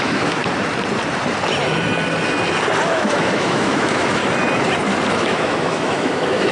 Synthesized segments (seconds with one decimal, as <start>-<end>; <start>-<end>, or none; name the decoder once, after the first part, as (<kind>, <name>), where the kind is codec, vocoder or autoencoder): 0.0-0.4 (autoencoder, DAC-VAE); 2.9-4.2; 5.1-6.5